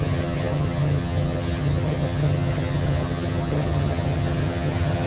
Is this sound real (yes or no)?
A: no